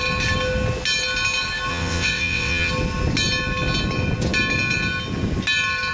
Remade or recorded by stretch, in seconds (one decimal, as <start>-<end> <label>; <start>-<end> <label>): 0.0-1.7 recorded; 1.7-2.7 remade; 2.7-5.9 recorded